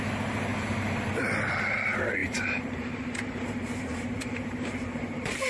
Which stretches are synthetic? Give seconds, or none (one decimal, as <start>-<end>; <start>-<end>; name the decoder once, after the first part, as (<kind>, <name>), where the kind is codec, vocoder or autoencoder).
0.5-1.1 (vocoder, BigVGAN v2); 2.2-5.5